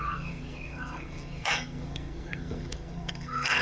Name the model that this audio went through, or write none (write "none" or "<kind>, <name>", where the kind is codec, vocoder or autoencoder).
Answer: codec, SNAC